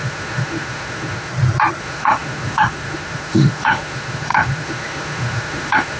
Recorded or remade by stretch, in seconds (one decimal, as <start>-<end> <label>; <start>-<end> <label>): 0.0-1.3 remade; 1.3-1.8 recorded; 1.8-6.0 remade